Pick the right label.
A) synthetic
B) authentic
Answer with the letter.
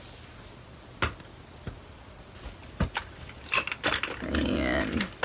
B